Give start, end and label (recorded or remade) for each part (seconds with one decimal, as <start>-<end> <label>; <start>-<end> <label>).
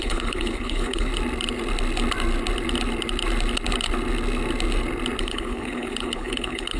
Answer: 0.0-1.1 remade; 1.1-5.2 recorded; 5.2-6.8 remade